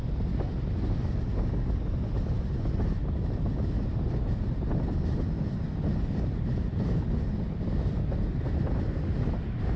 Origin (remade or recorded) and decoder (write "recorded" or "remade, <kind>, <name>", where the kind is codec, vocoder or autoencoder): recorded